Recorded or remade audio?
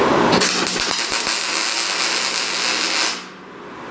recorded